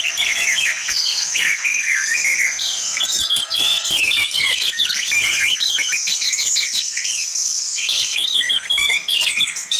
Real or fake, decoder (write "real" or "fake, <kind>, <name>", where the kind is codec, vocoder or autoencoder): fake, codec, SNAC